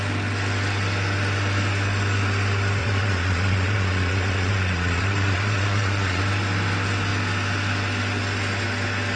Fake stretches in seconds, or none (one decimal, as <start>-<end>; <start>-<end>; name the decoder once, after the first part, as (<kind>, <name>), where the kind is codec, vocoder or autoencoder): 2.8-6.2 (vocoder, Vocos)